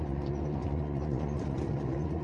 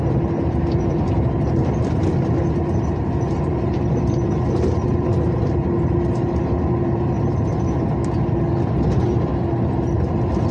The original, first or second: second